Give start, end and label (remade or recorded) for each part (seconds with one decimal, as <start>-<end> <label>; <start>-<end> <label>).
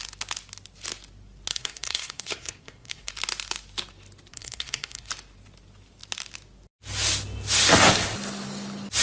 0.0-1.5 recorded; 1.5-3.1 remade; 3.1-4.3 recorded; 4.3-5.1 remade; 5.1-9.0 recorded